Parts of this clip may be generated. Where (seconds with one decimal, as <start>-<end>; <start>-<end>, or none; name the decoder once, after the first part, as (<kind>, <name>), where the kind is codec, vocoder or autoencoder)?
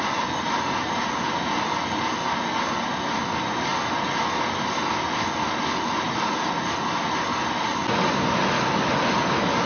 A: none